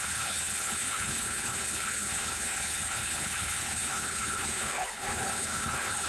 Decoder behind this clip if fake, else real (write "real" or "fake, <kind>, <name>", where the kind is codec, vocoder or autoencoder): fake, codec, HILCodec